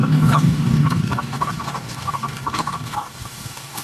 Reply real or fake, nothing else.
fake